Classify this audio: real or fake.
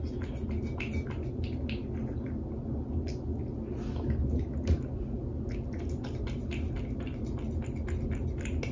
real